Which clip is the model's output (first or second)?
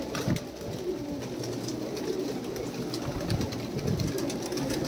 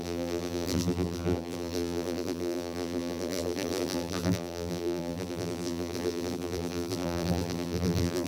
second